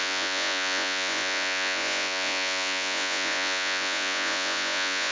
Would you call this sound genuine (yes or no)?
no